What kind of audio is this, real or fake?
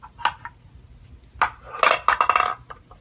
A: real